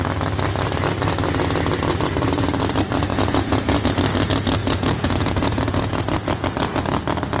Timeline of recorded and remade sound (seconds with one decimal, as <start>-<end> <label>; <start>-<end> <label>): 0.0-3.1 recorded; 3.1-3.9 remade; 3.9-4.6 recorded; 4.6-6.0 remade; 6.0-7.4 recorded